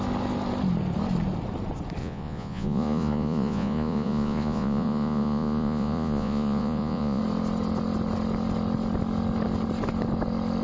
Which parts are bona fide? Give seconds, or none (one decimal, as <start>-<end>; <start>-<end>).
0.0-2.0; 7.2-10.6